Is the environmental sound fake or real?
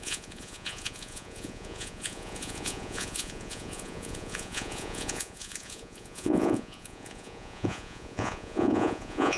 fake